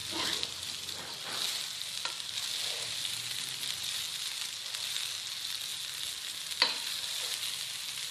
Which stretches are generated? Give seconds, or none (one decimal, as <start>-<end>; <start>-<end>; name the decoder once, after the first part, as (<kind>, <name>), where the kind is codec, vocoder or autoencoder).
none